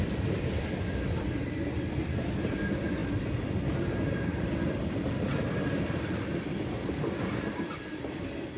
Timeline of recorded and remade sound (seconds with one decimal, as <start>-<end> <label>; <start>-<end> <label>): 0.0-8.6 remade